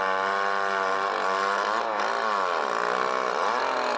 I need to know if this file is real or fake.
real